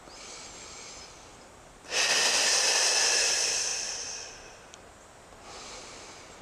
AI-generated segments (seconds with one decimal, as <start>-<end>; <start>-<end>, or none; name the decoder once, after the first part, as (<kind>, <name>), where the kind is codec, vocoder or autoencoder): none